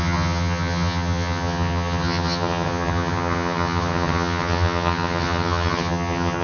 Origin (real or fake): fake